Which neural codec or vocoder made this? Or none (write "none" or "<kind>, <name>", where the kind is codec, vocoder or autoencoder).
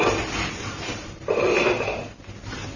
none